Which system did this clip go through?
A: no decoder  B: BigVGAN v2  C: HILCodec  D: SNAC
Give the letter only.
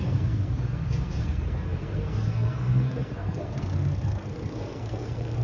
D